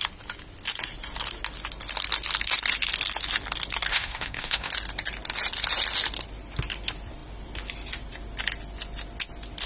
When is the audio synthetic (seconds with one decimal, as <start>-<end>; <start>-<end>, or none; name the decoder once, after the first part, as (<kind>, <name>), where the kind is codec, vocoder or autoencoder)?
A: 3.9-4.7 (codec, SNAC)